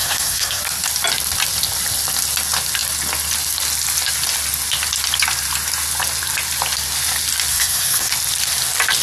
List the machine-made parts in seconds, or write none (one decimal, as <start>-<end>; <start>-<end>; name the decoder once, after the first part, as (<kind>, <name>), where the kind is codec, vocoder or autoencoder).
0.0-0.6 (codec, SNAC); 7.5-8.1